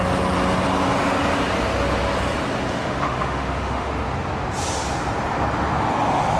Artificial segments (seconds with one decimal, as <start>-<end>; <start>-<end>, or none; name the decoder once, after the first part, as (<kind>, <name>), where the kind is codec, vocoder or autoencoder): 2.7-3.9 (autoencoder, DAC-VAE)